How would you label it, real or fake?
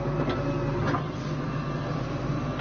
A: real